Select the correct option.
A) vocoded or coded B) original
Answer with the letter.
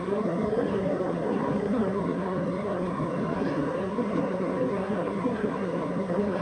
A